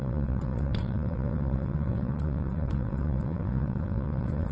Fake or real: fake